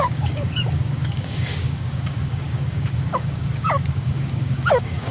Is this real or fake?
fake